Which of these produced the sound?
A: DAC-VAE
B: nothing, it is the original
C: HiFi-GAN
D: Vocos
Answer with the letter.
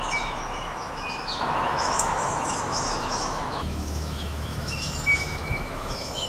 A